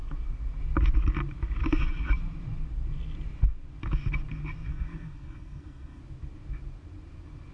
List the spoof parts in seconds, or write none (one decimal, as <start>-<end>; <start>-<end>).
4.7-6.0